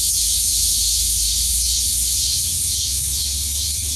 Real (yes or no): no